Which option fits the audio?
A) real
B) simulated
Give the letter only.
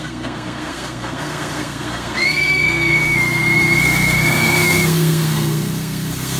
B